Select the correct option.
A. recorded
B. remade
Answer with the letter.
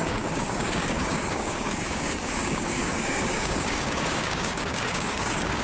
B